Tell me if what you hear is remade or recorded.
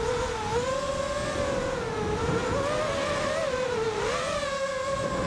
recorded